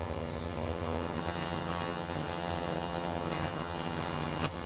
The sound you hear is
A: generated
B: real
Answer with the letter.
A